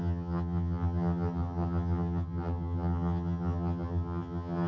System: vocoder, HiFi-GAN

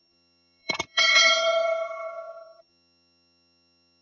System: vocoder, HiFi-GAN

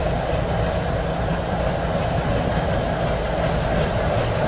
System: none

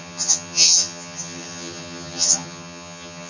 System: vocoder, HiFi-GAN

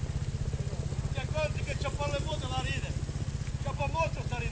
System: none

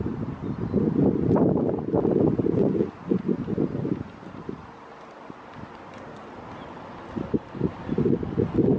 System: none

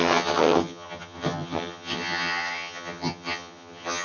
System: vocoder, HiFi-GAN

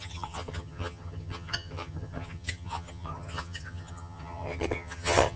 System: vocoder, HiFi-GAN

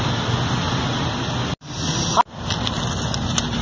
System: none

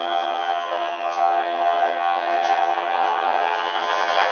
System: vocoder, HiFi-GAN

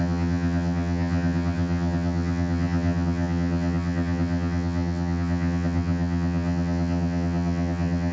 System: vocoder, HiFi-GAN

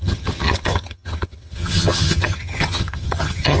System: vocoder, HiFi-GAN